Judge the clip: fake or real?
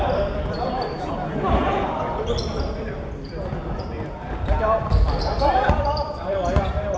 fake